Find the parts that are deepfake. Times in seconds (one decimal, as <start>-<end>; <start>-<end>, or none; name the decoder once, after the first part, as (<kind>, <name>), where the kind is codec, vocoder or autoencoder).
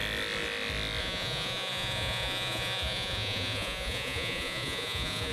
1.0-5.3 (vocoder, Vocos)